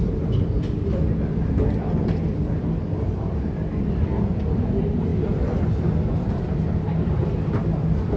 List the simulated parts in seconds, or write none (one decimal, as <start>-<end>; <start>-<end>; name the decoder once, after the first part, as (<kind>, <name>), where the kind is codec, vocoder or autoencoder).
none